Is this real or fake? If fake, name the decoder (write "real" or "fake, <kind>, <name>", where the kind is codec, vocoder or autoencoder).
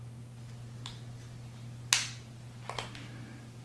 real